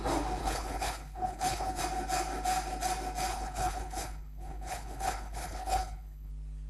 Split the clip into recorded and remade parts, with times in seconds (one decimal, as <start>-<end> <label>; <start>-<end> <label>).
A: 0.0-0.4 recorded; 0.4-1.8 remade; 1.8-3.3 recorded; 3.3-6.3 remade; 6.3-6.7 recorded